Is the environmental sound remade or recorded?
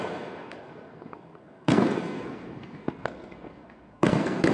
remade